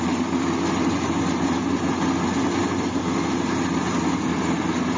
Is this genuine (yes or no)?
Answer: yes